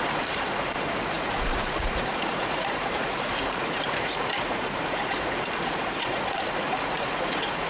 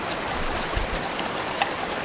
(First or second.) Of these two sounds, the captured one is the second